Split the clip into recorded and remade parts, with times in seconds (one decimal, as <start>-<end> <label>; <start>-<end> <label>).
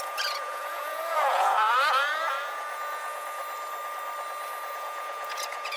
0.0-3.4 remade; 3.4-4.6 recorded; 4.6-5.8 remade